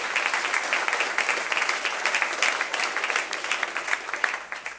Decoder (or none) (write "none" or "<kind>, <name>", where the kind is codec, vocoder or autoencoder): none